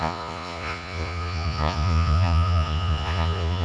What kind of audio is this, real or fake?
fake